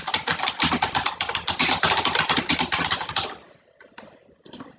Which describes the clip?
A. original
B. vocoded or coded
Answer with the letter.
A